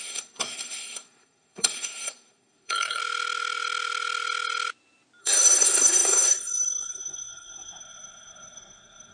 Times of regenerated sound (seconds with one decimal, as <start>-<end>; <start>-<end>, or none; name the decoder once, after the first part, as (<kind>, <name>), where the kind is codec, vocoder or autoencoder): 0.0-3.0 (codec, SNAC); 5.2-9.1